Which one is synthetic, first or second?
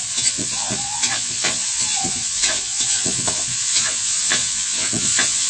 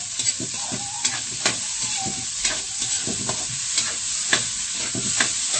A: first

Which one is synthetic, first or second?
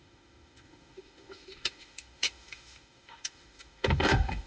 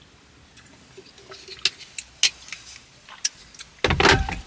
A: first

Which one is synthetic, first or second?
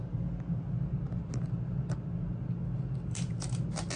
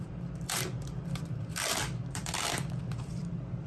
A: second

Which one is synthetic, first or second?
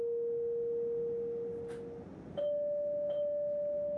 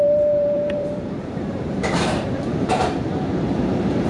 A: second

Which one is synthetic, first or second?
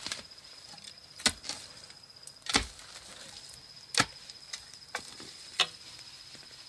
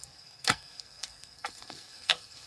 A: second